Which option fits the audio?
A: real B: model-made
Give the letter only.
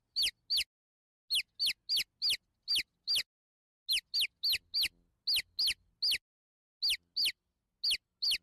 A